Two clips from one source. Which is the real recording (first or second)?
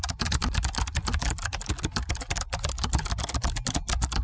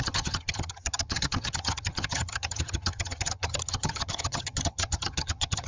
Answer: first